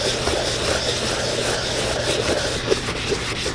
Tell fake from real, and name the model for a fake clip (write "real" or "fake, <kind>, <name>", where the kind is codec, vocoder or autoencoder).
real